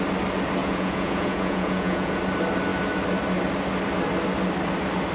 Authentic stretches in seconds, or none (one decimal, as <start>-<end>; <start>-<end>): 0.0-0.6; 2.2-5.1